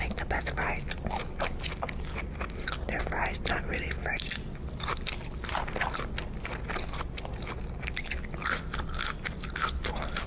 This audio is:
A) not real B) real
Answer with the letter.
B